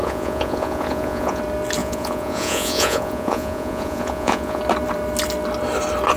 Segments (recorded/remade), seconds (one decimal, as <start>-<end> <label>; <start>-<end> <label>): 0.0-1.4 remade; 1.4-1.8 recorded; 1.8-4.6 remade; 4.6-6.2 recorded